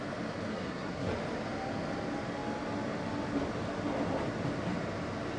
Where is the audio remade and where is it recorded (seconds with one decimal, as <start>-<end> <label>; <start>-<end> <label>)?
0.0-0.5 recorded; 0.5-1.1 remade; 1.1-5.4 recorded